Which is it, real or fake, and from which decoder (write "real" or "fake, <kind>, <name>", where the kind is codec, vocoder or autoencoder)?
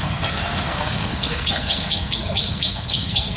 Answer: fake, codec, SNAC